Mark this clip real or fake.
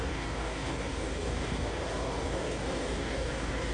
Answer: fake